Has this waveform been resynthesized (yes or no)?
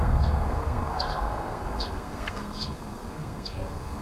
yes